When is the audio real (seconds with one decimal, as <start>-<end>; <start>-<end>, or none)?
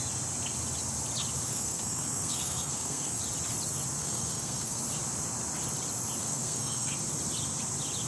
0.0-1.5; 3.2-4.0; 4.8-6.2; 6.9-8.1